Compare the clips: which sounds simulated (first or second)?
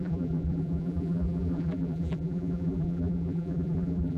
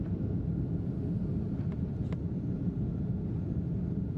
first